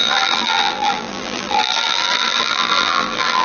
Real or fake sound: fake